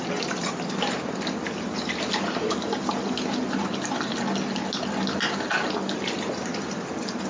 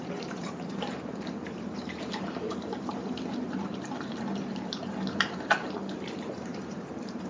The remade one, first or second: second